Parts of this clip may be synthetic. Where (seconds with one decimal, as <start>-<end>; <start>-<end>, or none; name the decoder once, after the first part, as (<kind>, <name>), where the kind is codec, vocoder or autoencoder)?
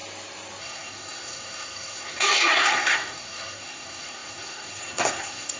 0.6-5.6 (codec, SNAC)